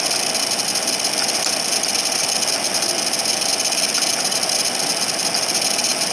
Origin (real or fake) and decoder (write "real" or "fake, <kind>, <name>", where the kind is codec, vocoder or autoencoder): real